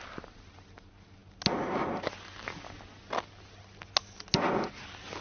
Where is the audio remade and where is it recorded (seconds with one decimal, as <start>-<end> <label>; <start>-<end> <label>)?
0.0-5.2 recorded